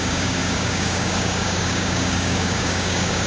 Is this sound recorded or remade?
remade